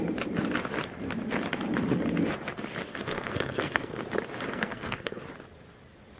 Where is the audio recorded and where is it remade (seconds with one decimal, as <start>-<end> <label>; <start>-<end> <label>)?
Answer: 0.0-2.9 recorded; 2.9-4.0 remade; 4.0-4.5 recorded; 4.5-5.2 remade; 5.2-6.2 recorded